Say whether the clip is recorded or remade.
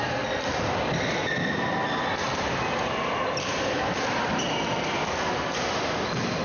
recorded